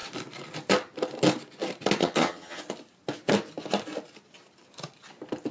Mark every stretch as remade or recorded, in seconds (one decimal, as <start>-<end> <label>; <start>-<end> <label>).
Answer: 0.0-2.0 recorded; 2.0-2.6 remade; 2.6-5.5 recorded